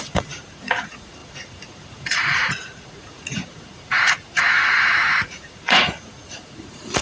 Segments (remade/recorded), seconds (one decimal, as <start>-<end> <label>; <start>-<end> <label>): 0.0-7.0 remade